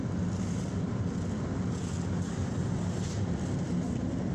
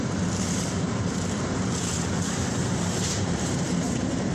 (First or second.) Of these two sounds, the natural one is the first